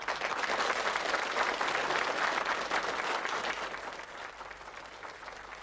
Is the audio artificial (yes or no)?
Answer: no